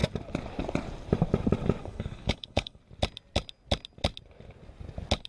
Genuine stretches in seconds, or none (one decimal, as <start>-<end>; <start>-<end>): 0.0-1.8; 2.8-5.3